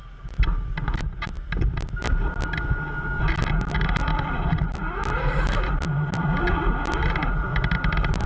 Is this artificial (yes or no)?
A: no